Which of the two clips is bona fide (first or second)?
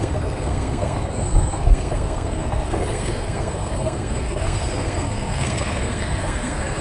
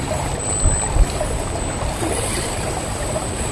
second